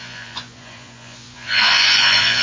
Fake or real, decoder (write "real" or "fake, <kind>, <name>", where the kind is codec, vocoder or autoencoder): fake, vocoder, Vocos